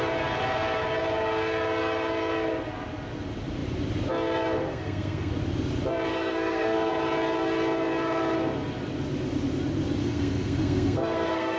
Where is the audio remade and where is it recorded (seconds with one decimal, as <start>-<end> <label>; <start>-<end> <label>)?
0.0-4.6 recorded; 4.6-5.3 remade; 5.3-6.1 recorded; 6.1-6.9 remade; 6.9-10.0 recorded; 10.0-11.6 remade